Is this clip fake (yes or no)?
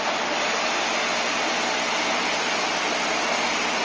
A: no